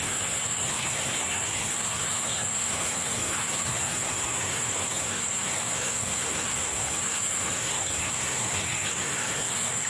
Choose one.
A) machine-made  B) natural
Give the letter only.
A